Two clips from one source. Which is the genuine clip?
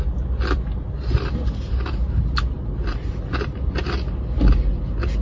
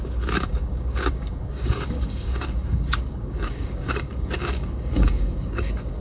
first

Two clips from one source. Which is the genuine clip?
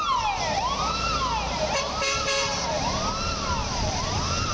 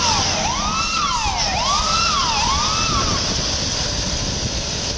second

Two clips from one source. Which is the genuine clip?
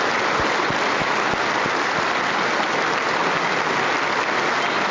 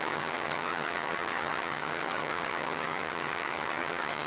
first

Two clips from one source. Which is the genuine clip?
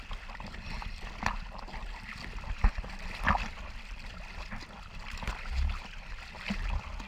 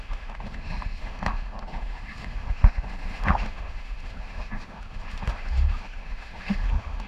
first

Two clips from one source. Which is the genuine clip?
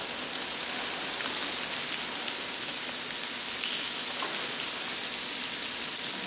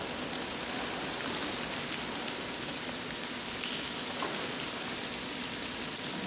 first